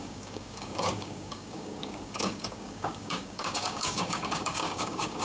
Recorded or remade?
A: remade